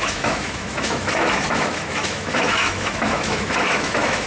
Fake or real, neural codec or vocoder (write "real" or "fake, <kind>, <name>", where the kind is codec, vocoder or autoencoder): fake, autoencoder, DAC-VAE